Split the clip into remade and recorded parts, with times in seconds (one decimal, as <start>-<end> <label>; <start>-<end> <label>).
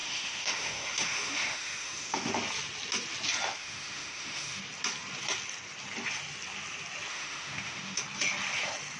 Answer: 0.0-2.3 remade; 2.3-3.6 recorded; 3.6-4.6 remade; 4.6-7.1 recorded; 7.1-8.0 remade; 8.0-9.0 recorded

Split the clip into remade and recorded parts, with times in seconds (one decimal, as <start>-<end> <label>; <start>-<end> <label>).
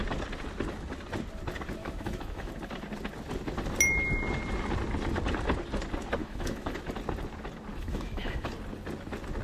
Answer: 0.0-1.8 recorded; 1.8-2.5 remade; 2.5-6.2 recorded; 6.2-6.8 remade; 6.8-7.7 recorded; 7.7-8.5 remade; 8.5-9.4 recorded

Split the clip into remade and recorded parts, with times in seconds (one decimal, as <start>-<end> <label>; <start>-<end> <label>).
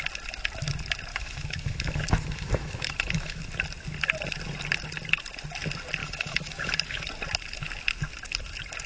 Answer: 0.0-1.1 recorded; 1.1-3.4 remade; 3.4-6.0 recorded; 6.0-7.0 remade; 7.0-8.9 recorded